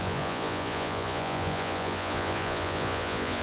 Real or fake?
fake